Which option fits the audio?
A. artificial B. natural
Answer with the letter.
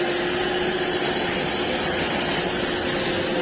B